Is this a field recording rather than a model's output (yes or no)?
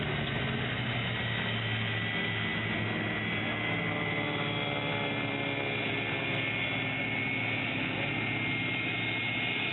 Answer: yes